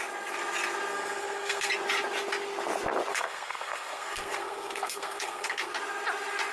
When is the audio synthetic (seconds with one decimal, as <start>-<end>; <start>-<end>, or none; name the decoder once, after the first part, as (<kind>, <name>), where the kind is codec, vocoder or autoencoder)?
0.9-1.7 (codec, SNAC); 3.1-5.7